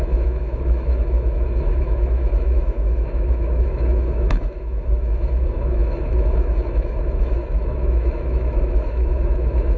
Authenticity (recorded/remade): remade